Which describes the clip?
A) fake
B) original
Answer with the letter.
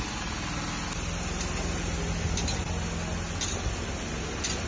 B